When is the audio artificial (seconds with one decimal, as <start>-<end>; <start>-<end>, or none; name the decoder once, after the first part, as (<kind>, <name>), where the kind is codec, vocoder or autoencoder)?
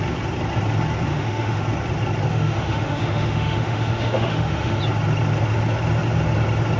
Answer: 1.1-1.6 (autoencoder, DAC-VAE); 2.3-4.8